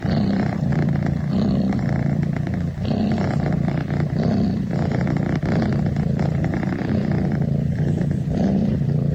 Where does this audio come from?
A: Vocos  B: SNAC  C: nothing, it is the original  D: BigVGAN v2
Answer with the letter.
D